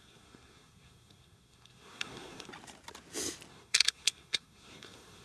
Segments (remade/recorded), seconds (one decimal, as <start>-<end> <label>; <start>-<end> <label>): 0.0-2.5 remade; 2.5-3.5 recorded; 3.5-5.2 remade